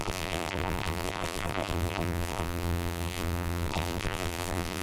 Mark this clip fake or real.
fake